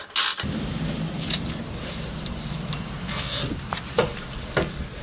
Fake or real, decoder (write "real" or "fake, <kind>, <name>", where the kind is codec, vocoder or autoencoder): real